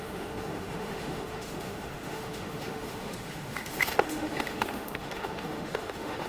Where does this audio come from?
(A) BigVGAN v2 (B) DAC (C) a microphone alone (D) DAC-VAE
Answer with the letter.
D